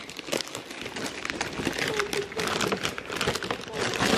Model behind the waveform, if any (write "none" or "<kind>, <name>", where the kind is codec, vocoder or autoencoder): none